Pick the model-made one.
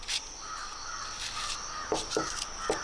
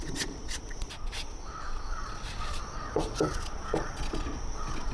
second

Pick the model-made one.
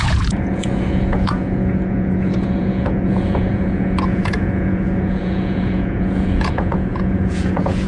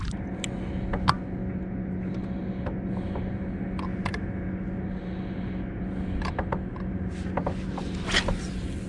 first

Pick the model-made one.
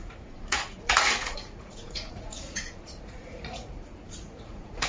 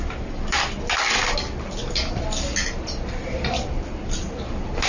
first